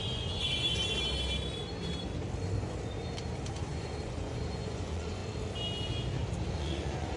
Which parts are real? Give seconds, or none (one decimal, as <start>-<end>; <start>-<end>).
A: 0.8-3.5; 5.2-6.5